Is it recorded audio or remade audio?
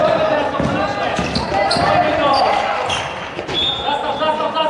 recorded